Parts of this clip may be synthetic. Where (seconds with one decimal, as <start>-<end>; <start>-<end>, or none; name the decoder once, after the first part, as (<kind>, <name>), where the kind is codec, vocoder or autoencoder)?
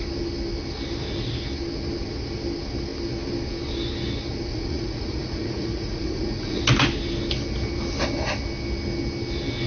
4.5-6.6 (vocoder, Vocos)